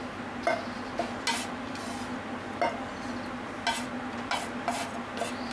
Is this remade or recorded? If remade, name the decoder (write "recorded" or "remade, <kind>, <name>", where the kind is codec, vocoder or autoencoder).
recorded